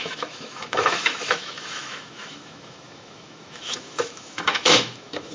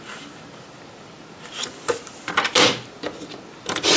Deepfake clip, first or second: first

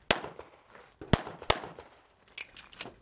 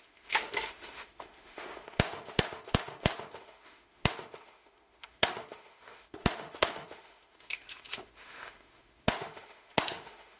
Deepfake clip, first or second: second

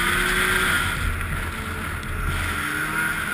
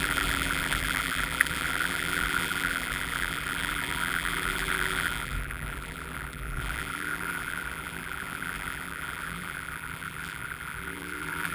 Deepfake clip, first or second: second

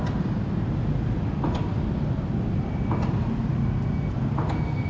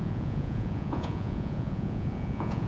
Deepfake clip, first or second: second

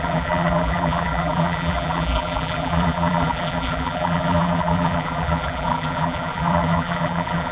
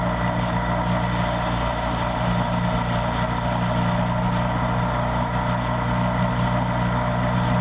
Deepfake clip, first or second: first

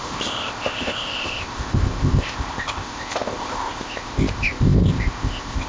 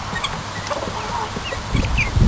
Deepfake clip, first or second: first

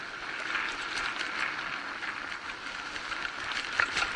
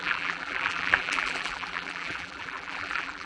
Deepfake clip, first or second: second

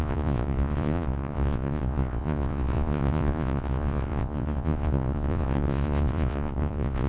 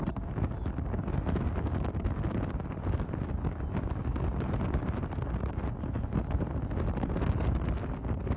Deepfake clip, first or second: first